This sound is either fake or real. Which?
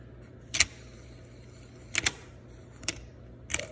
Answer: real